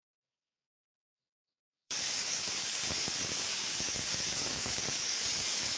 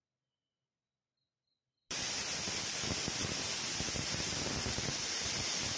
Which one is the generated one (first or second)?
first